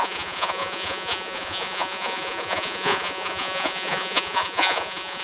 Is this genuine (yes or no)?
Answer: no